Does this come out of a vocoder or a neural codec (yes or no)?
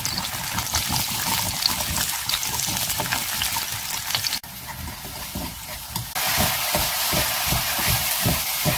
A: no